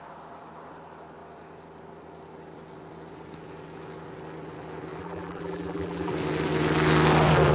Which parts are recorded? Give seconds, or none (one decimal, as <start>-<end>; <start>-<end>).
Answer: 0.0-5.0; 6.1-7.5